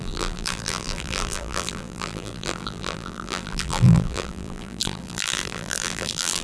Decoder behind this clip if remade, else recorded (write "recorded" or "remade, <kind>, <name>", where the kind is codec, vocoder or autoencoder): remade, vocoder, BigVGAN v2